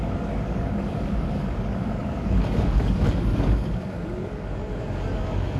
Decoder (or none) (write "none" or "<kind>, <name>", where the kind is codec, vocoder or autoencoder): codec, DAC